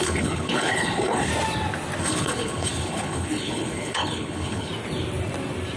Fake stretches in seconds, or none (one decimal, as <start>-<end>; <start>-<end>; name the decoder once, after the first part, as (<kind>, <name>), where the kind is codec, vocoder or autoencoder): 0.0-1.3 (codec, HILCodec); 2.0-4.7